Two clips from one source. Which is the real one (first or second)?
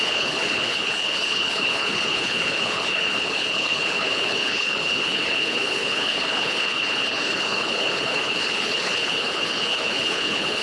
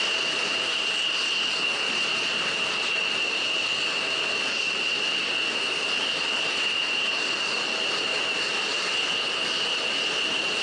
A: second